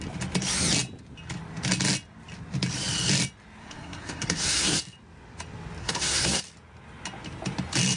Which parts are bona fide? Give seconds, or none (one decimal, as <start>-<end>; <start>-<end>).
0.0-3.6; 4.8-5.8; 6.4-8.0